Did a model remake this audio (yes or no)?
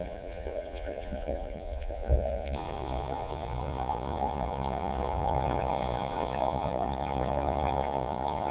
yes